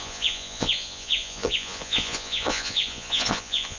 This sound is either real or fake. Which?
fake